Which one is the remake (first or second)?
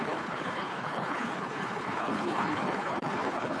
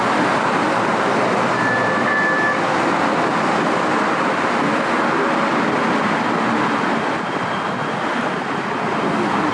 first